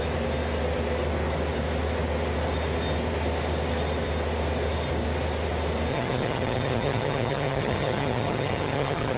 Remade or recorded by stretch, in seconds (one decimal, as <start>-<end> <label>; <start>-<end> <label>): 0.0-5.9 recorded; 5.9-9.2 remade